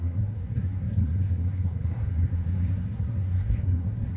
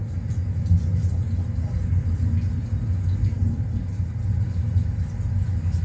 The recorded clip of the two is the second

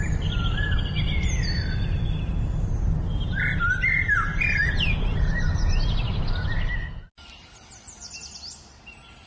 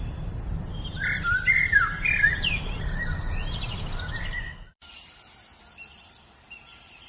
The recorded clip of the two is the first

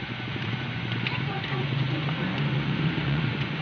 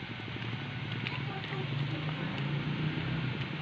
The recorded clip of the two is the second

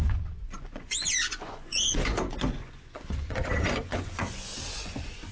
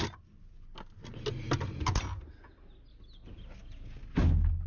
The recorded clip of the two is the second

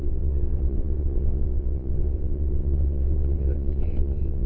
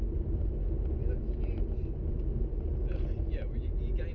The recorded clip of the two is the second